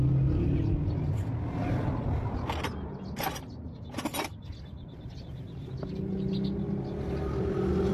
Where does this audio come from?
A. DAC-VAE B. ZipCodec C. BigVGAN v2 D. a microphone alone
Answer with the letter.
D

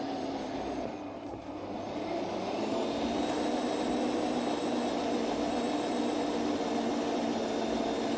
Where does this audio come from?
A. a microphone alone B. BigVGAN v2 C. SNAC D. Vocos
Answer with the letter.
A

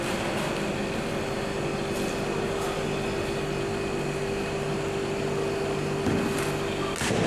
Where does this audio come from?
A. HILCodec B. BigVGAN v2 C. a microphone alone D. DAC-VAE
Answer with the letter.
C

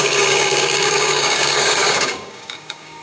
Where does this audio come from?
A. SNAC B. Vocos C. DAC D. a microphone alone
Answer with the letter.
C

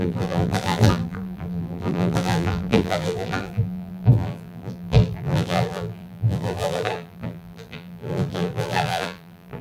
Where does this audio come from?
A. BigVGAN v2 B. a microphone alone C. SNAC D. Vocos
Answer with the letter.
A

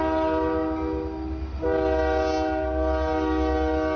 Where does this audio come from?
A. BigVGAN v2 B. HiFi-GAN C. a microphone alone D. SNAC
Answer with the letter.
C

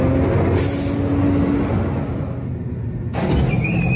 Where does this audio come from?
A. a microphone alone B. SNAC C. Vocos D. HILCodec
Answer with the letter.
A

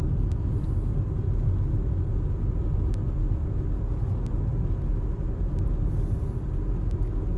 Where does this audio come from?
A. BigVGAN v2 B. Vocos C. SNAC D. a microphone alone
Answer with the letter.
D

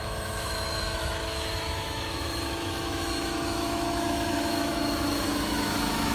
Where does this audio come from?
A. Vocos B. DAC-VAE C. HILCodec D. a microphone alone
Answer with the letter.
B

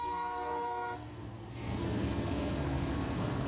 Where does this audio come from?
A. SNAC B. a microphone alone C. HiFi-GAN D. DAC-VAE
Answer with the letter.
A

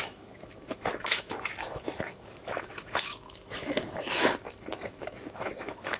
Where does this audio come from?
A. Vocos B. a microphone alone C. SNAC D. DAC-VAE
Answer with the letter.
D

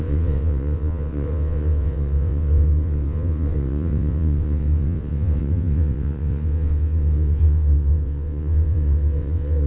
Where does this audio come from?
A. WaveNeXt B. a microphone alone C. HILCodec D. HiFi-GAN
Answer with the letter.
A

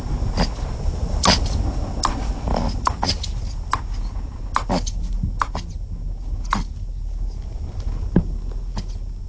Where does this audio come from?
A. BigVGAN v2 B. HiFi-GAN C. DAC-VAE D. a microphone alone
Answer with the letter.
D